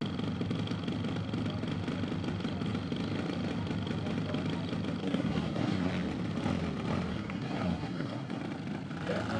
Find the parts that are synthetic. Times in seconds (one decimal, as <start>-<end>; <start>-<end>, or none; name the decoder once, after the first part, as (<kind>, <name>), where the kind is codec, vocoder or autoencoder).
5.0-5.9 (codec, SNAC); 7.1-8.4